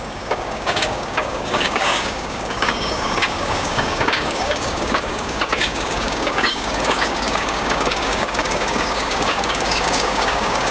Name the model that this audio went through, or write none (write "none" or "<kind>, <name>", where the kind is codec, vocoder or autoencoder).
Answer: codec, DAC